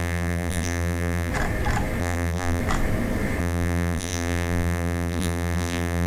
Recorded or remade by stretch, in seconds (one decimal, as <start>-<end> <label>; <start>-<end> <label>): 0.0-1.3 remade; 1.3-2.0 recorded; 2.0-2.6 remade; 2.6-3.4 recorded; 3.4-6.1 remade